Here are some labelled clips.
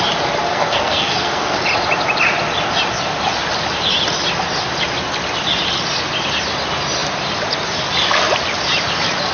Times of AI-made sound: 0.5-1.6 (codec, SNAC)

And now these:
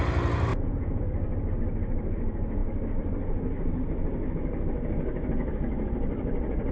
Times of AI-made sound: 0.5-1.0 (vocoder, Vocos)

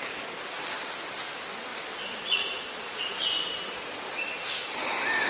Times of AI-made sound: 1.7-3.1 (vocoder, Vocos)